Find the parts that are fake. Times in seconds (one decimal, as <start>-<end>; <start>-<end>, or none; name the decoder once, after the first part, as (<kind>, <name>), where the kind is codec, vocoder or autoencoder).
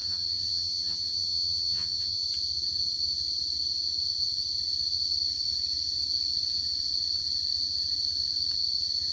0.0-2.2 (vocoder, HiFi-GAN)